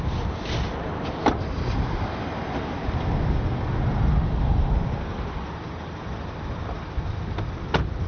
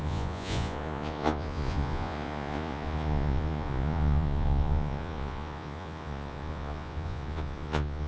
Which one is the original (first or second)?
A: first